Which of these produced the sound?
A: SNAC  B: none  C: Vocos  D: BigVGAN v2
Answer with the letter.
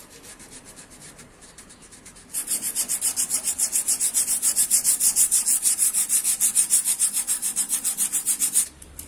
D